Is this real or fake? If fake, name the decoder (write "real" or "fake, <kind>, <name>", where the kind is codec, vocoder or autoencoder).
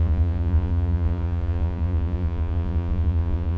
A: fake, vocoder, Vocos